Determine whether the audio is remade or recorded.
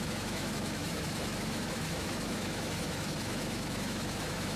remade